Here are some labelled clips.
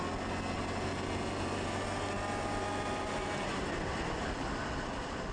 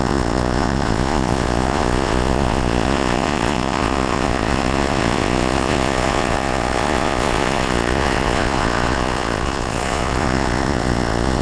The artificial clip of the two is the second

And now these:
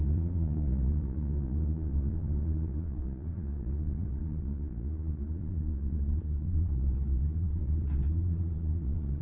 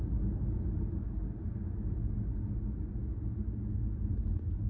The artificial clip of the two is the first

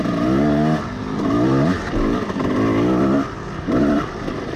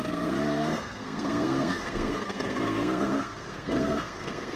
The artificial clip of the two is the second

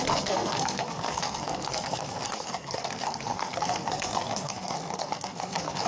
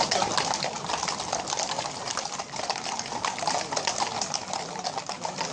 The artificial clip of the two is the first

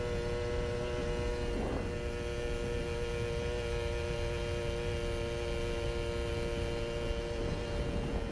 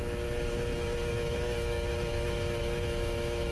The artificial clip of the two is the second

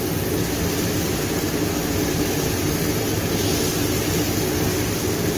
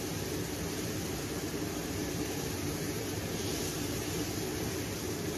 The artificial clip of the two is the second